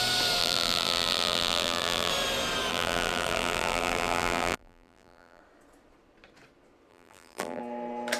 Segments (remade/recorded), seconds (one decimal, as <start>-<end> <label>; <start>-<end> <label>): 0.0-0.4 recorded; 0.4-2.1 remade; 2.1-2.7 recorded; 2.7-5.4 remade; 5.4-6.9 recorded; 6.9-7.6 remade; 7.6-8.2 recorded